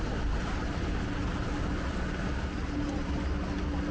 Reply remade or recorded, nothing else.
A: recorded